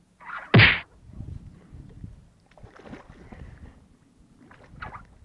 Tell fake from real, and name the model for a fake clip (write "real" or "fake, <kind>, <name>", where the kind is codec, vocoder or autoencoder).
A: real